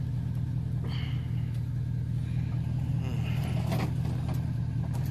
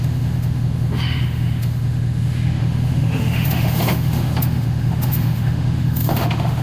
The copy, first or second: second